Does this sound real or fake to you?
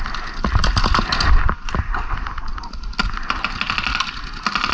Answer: real